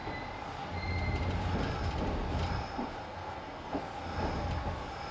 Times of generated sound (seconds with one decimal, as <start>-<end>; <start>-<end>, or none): 3.0-3.8